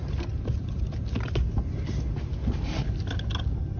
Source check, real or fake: real